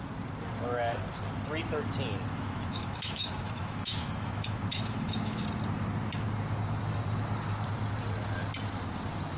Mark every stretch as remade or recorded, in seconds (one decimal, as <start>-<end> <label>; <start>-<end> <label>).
0.0-2.3 recorded; 2.3-5.4 remade; 5.4-9.4 recorded